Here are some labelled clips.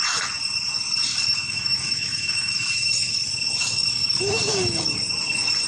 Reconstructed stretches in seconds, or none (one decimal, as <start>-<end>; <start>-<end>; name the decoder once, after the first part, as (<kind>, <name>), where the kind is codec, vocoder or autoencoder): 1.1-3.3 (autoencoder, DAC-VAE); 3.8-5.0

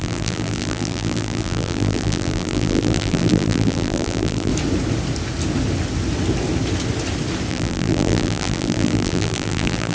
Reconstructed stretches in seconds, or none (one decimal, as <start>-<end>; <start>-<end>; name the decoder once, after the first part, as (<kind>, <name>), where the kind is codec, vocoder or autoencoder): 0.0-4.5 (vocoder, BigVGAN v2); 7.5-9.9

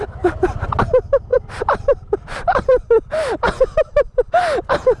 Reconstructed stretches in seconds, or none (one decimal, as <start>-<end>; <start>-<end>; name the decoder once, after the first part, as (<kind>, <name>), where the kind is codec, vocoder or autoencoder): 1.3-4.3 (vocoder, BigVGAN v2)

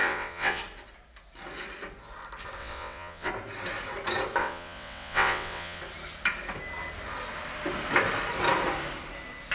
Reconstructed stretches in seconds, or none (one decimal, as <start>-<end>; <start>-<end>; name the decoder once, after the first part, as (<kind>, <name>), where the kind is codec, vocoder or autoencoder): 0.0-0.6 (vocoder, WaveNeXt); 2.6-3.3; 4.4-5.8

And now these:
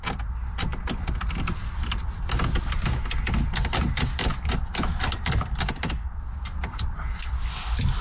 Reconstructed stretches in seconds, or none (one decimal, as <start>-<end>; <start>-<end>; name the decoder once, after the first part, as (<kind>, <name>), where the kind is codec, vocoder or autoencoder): none

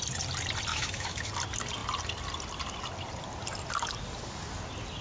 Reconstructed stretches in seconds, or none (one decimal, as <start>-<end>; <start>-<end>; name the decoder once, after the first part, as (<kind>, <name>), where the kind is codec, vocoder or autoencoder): 0.7-1.3 (autoencoder, DAC-VAE)